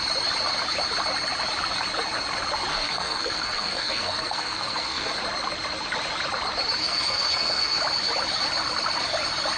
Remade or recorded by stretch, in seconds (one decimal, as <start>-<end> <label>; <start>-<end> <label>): 0.0-2.7 recorded; 2.7-5.2 remade; 5.2-6.8 recorded; 6.8-7.8 remade; 7.8-9.6 recorded